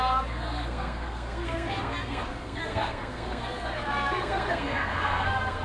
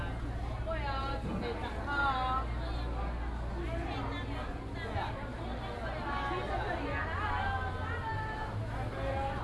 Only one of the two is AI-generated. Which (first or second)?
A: first